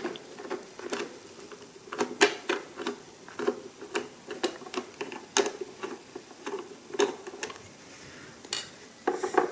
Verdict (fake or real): real